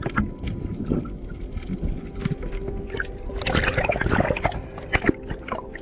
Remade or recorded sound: recorded